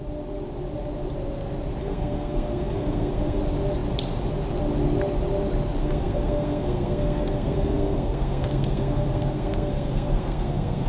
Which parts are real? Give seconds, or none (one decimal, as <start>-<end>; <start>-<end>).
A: 0.0-1.8; 3.4-5.8